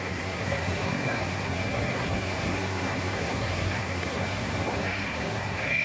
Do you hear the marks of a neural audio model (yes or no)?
yes